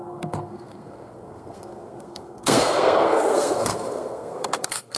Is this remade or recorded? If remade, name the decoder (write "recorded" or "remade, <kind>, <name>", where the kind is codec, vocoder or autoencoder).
remade, codec, SNAC